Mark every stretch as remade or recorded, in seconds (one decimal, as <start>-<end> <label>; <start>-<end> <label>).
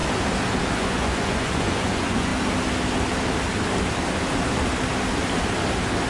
0.0-0.7 recorded; 0.7-2.3 remade; 2.3-6.1 recorded